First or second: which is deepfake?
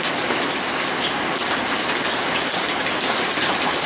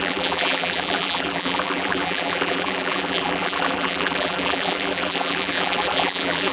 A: second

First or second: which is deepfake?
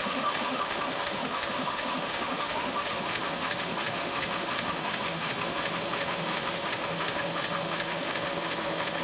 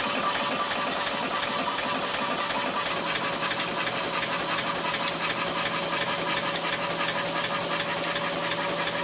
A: first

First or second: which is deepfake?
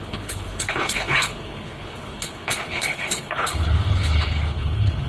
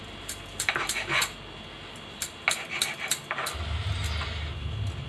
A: first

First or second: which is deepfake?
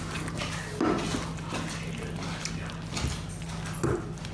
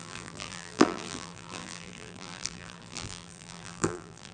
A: second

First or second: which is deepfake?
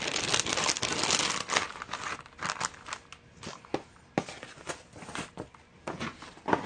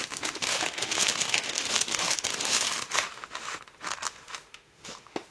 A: second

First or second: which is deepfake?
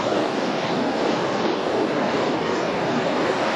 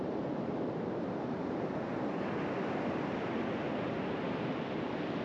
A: first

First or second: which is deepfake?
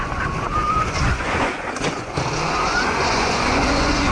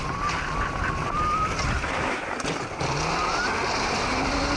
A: first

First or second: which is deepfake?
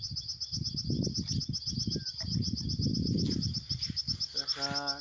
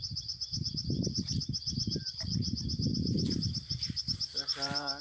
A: second